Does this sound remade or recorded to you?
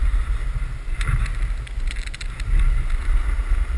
recorded